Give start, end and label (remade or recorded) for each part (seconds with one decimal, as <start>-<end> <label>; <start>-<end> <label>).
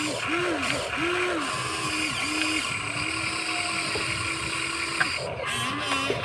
0.0-6.2 recorded